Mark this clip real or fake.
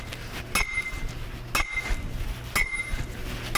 real